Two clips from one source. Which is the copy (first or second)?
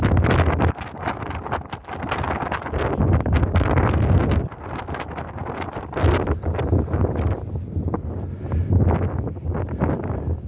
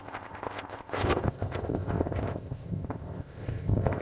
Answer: second